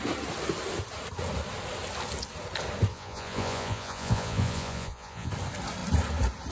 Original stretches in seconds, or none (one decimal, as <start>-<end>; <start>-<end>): 0.0-2.9; 5.3-6.5